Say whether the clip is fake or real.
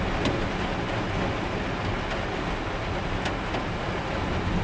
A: real